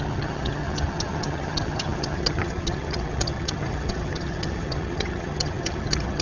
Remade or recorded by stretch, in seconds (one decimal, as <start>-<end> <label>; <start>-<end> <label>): 0.0-6.2 remade